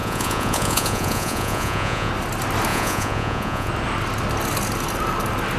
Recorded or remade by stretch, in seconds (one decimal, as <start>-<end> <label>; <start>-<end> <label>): 0.0-2.1 remade; 2.1-2.7 recorded; 2.7-3.7 remade; 3.7-5.6 recorded